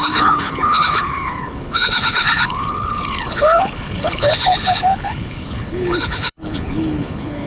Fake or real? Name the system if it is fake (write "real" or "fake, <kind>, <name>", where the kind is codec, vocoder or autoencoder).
fake, codec, HILCodec